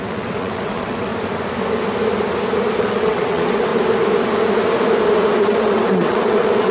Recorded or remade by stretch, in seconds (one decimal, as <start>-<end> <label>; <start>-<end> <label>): 0.0-1.1 remade; 1.1-2.8 recorded; 2.8-3.7 remade; 3.7-5.4 recorded; 5.4-6.7 remade